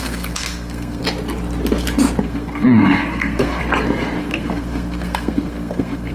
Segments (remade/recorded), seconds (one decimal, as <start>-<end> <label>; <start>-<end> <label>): 0.0-1.0 remade; 1.0-2.2 recorded; 2.2-3.6 remade; 3.6-4.2 recorded; 4.2-6.1 remade